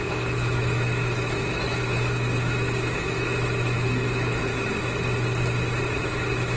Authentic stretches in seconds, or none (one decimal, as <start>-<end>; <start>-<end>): 4.5-6.0